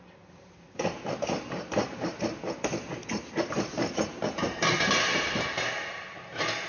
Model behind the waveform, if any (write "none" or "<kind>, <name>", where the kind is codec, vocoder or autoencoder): vocoder, BigVGAN v2